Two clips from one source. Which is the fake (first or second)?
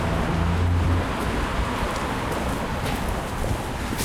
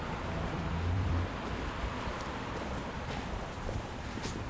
second